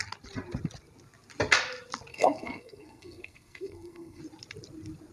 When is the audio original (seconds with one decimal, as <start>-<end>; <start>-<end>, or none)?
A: 0.0-2.1; 4.2-5.1